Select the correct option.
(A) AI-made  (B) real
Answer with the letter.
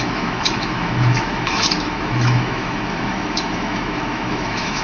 A